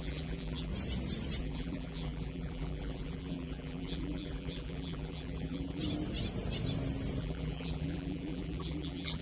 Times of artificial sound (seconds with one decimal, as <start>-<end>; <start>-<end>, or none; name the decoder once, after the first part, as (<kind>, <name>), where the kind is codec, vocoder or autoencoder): 0.0-0.7 (vocoder, BigVGAN v2); 1.4-5.8; 7.2-9.2